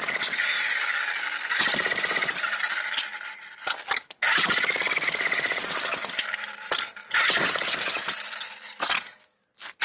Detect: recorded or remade recorded